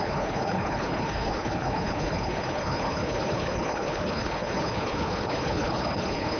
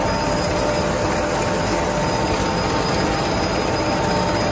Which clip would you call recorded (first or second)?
second